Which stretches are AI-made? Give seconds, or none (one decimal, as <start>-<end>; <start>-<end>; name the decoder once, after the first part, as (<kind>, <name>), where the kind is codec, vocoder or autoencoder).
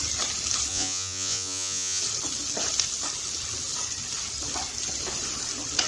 0.7-2.0 (vocoder, Vocos)